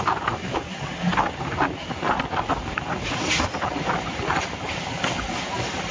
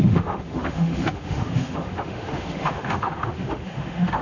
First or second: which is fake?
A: second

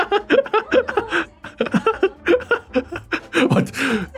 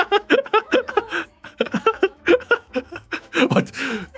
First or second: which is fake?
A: second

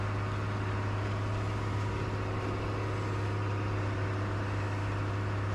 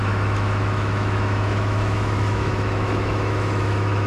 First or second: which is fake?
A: second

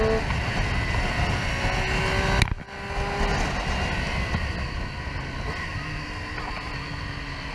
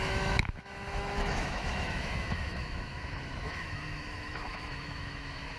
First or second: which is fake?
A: second